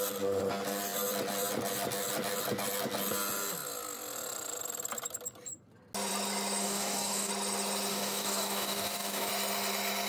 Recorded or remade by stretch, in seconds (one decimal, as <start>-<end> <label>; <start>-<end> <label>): 0.0-6.6 recorded; 6.6-7.3 remade; 7.3-7.9 recorded; 7.9-9.3 remade; 9.3-10.1 recorded

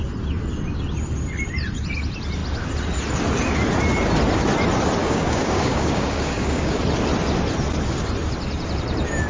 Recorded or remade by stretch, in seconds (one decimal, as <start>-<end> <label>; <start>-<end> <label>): 0.0-5.0 recorded; 5.0-6.8 remade; 6.8-9.3 recorded

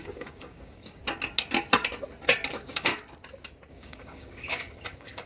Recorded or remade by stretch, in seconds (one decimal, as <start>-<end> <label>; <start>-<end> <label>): 0.0-1.0 remade; 1.0-2.5 recorded; 2.5-2.9 remade; 2.9-3.7 recorded; 3.7-5.3 remade

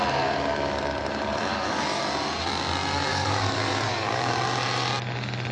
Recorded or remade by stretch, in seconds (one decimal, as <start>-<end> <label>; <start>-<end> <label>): 0.0-1.5 recorded; 1.5-2.0 remade; 2.0-3.1 recorded; 3.1-4.3 remade; 4.3-5.5 recorded

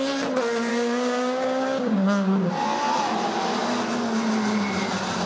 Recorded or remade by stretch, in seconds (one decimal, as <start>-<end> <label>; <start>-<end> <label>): 0.0-0.7 recorded; 0.7-2.5 remade; 2.5-5.3 recorded

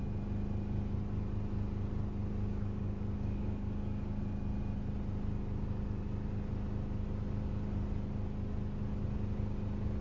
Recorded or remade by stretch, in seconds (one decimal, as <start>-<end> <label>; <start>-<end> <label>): 0.0-2.5 recorded; 2.5-4.2 remade; 4.2-10.0 recorded

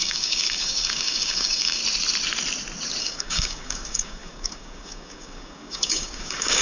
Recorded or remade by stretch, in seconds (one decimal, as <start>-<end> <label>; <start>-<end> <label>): 0.0-1.8 remade; 1.8-3.0 recorded; 3.0-6.6 remade

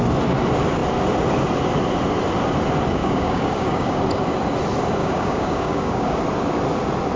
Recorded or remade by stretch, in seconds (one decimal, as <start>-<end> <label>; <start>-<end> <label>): 0.0-3.0 recorded; 3.0-4.0 remade; 4.0-5.0 recorded; 5.0-6.2 remade; 6.2-7.2 recorded